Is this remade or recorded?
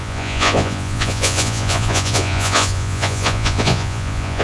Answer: remade